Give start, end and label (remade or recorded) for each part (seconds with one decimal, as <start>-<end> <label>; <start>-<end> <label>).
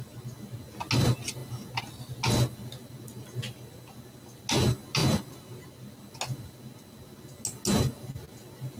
0.0-5.0 recorded; 5.0-6.0 remade; 6.0-8.8 recorded